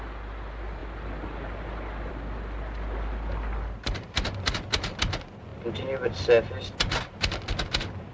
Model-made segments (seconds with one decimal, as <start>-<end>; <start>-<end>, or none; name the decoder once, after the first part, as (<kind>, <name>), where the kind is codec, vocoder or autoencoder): none